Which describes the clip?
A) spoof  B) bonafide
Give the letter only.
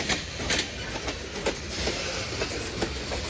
B